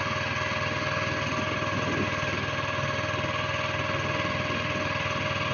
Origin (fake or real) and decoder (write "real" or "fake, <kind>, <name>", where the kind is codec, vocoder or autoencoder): real